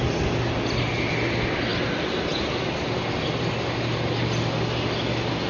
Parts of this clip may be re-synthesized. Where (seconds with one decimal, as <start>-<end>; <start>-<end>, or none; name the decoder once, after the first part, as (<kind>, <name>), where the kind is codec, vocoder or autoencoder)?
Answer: none